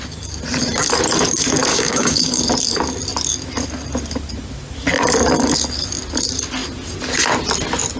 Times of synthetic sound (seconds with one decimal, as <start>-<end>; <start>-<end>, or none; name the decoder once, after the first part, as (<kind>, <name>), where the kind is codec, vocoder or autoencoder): 1.7-2.4 (codec, DAC)